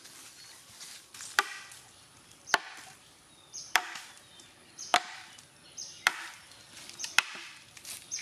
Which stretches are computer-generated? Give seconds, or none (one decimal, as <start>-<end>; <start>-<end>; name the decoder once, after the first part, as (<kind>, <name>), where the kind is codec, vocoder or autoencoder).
none